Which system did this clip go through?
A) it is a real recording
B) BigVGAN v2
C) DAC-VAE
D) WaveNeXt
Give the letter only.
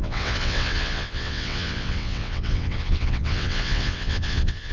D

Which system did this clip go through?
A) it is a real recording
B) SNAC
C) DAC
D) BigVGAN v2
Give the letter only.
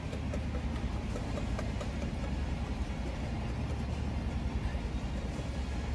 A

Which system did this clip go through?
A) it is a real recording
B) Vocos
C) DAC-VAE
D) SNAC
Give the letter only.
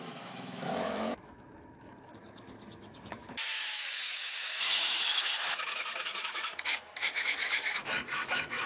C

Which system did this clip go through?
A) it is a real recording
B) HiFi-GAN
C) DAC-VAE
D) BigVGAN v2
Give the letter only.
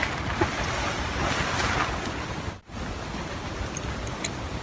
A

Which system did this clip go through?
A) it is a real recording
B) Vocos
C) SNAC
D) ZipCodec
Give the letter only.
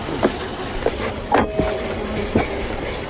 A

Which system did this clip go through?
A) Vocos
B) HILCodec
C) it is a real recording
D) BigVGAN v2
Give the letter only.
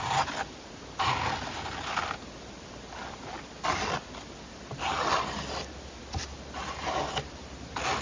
C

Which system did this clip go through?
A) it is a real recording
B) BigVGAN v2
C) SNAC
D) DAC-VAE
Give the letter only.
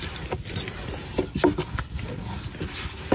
A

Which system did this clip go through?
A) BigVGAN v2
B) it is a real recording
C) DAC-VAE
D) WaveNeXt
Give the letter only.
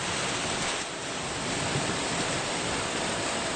B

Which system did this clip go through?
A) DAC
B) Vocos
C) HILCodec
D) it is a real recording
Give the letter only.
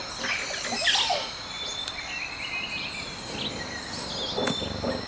D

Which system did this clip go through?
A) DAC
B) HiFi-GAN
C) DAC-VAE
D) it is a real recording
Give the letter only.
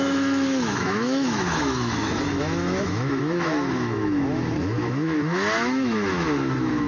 C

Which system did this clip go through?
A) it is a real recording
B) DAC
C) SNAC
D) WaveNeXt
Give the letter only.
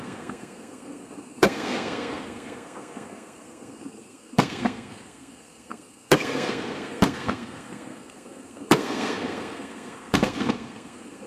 C